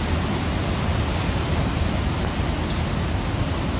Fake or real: real